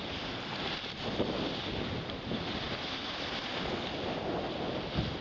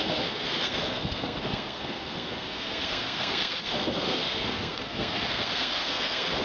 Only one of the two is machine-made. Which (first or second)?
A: second